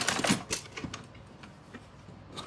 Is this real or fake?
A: real